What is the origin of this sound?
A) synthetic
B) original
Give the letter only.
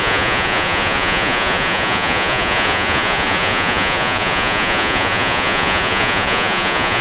A